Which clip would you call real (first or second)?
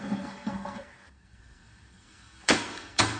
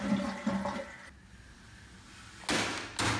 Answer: second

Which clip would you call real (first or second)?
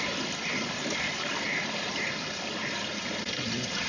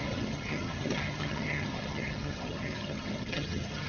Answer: first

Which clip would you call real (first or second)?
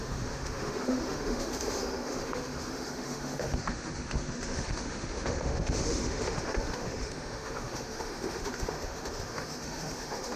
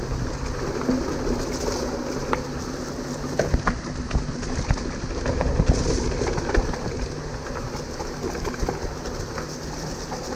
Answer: second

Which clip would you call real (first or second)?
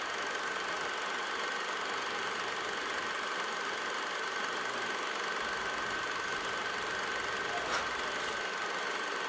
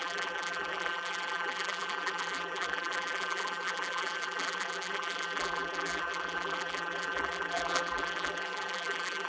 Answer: first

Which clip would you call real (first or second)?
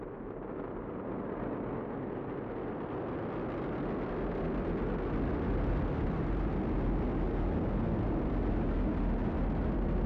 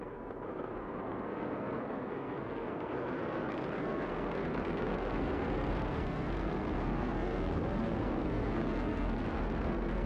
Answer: first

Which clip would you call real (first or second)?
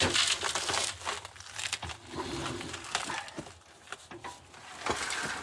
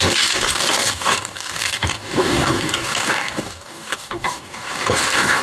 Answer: first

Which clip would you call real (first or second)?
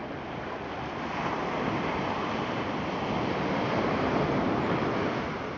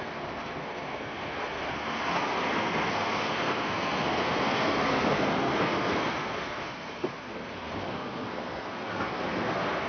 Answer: first